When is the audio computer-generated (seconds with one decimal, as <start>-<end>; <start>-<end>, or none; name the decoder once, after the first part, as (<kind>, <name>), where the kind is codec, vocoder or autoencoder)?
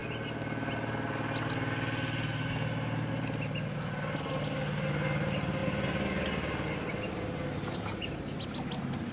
none